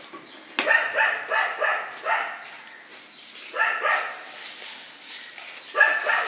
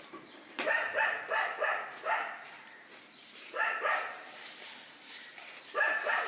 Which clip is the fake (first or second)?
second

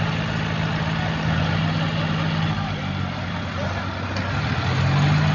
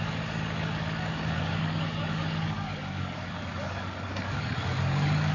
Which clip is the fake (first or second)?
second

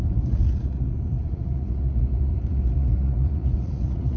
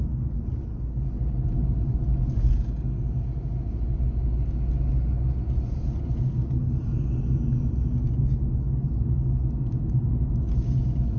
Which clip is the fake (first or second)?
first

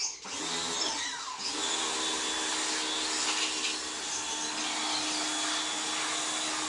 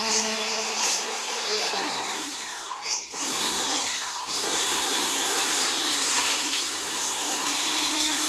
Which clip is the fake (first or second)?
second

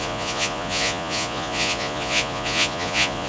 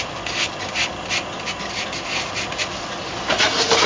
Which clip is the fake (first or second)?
first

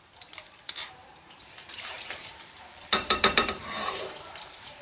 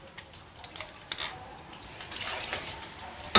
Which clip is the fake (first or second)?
first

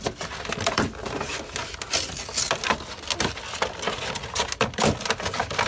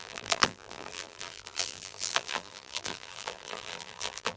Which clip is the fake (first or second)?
second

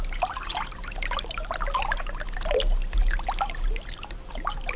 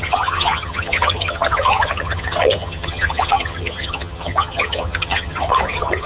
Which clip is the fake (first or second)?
second